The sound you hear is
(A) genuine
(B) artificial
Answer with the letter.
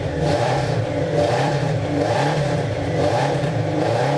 B